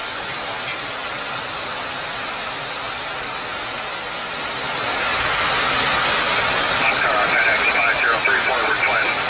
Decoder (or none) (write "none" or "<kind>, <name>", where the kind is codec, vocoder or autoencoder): none